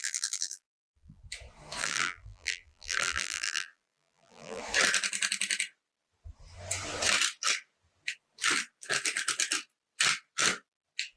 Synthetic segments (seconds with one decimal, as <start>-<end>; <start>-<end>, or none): 0.0-1.2; 1.8-4.6